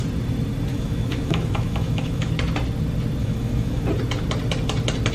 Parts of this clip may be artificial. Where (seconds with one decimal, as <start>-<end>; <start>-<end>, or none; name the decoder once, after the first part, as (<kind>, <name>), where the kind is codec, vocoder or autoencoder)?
0.7-2.3 (autoencoder, DAC-VAE); 3.2-3.9